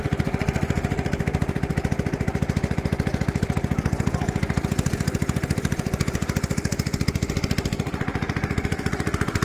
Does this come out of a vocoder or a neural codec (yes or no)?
no